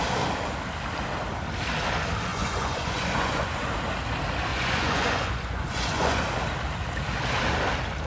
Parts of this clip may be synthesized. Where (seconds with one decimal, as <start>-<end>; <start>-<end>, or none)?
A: 2.3-3.7; 4.5-6.2